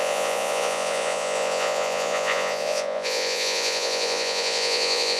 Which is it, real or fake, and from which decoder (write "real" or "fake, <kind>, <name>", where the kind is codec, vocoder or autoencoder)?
fake, vocoder, Vocos